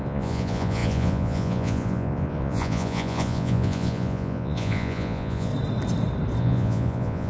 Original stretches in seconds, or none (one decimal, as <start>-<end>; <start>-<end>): 5.5-6.4